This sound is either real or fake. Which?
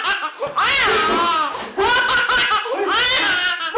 real